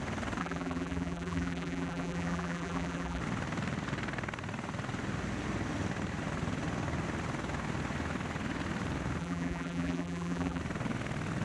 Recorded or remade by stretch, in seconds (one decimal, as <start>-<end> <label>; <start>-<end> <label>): 0.0-0.4 recorded; 0.4-3.2 remade; 3.2-9.2 recorded; 9.2-10.6 remade; 10.6-11.4 recorded